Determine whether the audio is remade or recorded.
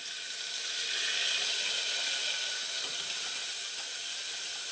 recorded